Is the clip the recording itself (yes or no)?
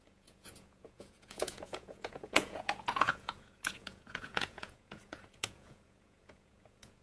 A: no